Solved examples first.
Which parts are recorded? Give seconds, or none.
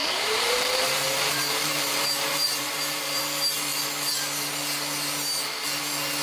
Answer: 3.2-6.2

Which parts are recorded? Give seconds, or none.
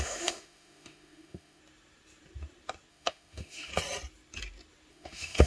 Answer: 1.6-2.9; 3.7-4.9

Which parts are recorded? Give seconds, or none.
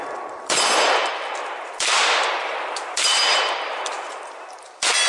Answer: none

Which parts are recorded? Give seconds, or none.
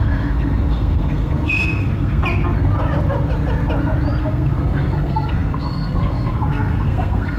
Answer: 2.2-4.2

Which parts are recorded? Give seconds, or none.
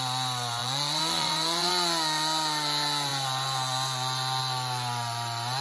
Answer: 0.0-0.6; 1.7-5.6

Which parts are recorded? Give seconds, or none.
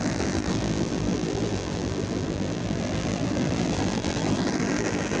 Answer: none